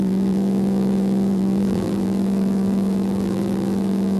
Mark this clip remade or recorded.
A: remade